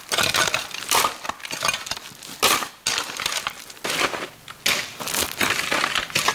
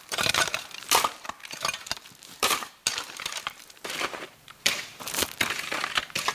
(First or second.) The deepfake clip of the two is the second